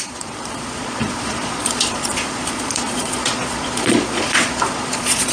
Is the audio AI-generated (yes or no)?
yes